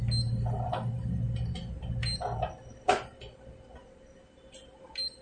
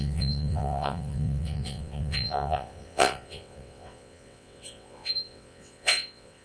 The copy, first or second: second